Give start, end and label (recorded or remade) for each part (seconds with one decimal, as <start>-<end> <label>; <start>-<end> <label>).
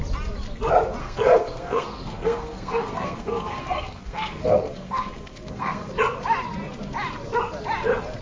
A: 0.0-1.0 recorded; 1.0-5.9 remade; 5.9-8.2 recorded